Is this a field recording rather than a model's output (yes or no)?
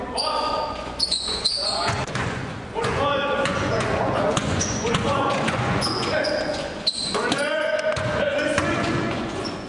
no